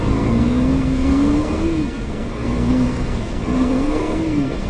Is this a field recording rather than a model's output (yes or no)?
no